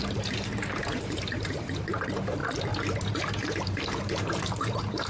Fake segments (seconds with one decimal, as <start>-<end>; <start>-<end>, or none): 0.0-2.4; 3.2-5.1